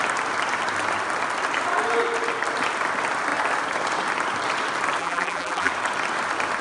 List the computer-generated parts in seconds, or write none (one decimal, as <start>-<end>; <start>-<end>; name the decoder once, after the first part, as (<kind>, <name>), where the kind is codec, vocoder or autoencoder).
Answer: 5.0-5.7 (vocoder, BigVGAN v2)